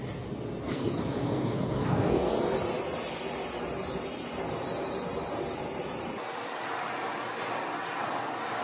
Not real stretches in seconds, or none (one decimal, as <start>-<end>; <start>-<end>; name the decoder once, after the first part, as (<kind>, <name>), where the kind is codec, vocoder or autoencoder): 0.7-2.3 (codec, SNAC)